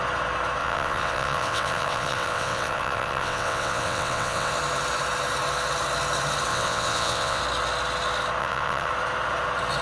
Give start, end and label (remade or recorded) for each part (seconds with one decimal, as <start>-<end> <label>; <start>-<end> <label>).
0.0-0.6 recorded; 0.6-4.5 remade; 4.5-6.5 recorded; 6.5-7.4 remade; 7.4-8.4 recorded; 8.4-8.9 remade; 8.9-9.8 recorded